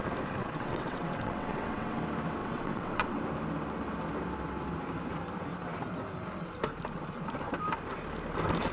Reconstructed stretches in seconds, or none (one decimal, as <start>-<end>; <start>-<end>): 0.4-2.0; 2.4-3.2